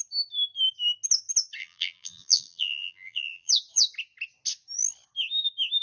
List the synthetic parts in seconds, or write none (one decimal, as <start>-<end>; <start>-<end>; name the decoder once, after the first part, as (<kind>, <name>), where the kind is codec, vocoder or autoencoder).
1.6-3.5 (vocoder, BigVGAN v2)